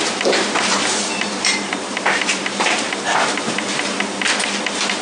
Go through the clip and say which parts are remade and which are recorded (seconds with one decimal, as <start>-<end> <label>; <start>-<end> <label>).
0.0-1.0 recorded; 1.0-4.0 remade; 4.0-5.0 recorded